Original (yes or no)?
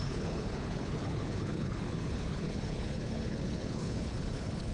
no